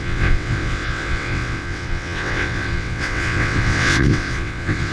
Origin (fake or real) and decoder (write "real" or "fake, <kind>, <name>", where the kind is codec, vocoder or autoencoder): fake, vocoder, WaveNeXt